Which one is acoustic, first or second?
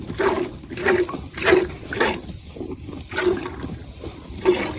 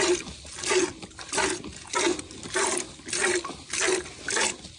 second